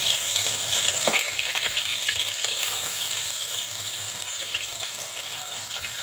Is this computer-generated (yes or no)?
yes